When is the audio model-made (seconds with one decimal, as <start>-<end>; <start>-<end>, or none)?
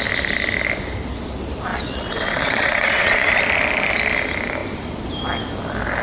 1.7-3.3